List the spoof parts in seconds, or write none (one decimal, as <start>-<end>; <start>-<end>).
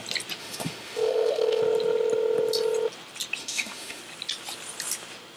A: 0.4-1.6; 3.4-4.0